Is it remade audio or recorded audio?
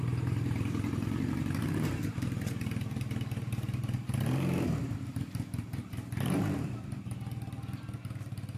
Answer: remade